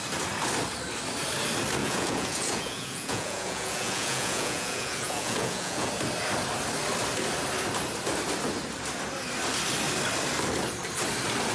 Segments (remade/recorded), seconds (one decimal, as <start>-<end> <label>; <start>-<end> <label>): 0.0-1.8 recorded; 1.8-5.9 remade; 5.9-11.5 recorded